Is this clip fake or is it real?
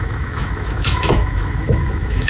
fake